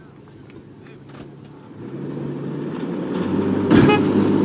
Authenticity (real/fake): real